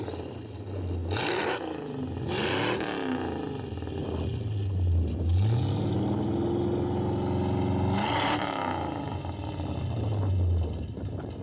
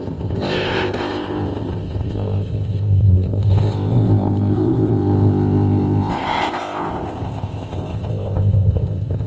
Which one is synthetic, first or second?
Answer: second